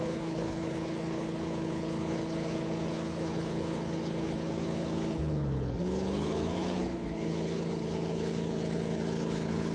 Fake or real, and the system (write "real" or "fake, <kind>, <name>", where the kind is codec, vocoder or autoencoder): fake, codec, HILCodec